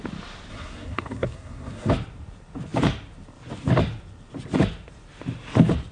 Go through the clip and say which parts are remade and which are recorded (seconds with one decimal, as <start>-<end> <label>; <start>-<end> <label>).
0.0-0.5 recorded; 0.5-1.9 remade; 1.9-5.9 recorded

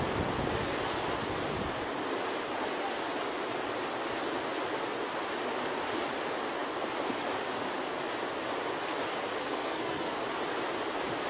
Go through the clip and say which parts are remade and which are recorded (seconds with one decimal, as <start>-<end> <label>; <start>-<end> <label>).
0.0-9.4 recorded; 9.4-10.2 remade; 10.2-11.3 recorded

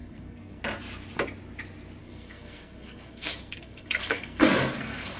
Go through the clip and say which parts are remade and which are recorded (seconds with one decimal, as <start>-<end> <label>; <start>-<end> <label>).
0.0-0.6 remade; 0.6-2.0 recorded; 2.0-5.2 remade

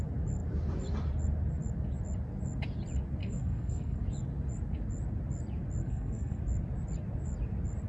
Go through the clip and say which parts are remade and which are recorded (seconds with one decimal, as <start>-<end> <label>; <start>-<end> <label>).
0.0-3.2 recorded; 3.2-4.0 remade; 4.0-5.8 recorded; 5.8-6.4 remade; 6.4-7.9 recorded